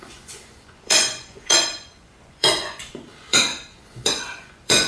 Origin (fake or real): fake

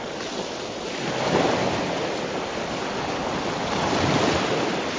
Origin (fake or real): real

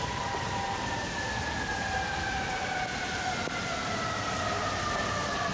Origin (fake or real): real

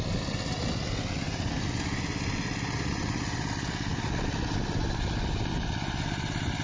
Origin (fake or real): real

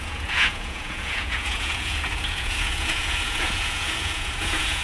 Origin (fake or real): fake